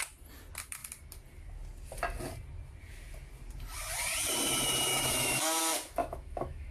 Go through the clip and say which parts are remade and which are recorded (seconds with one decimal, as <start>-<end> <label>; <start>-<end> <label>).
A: 0.0-4.9 recorded; 4.9-5.6 remade; 5.6-6.0 recorded; 6.0-6.7 remade